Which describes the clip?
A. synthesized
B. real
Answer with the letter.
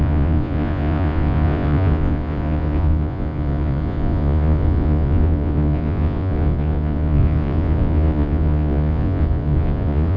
A